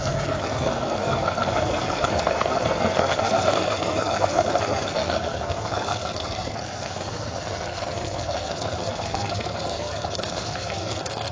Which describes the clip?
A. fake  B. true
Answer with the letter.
A